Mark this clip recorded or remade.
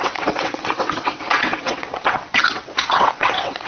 remade